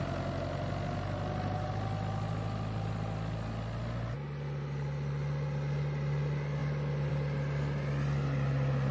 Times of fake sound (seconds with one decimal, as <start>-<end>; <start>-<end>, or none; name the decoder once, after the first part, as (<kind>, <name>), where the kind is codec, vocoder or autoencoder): none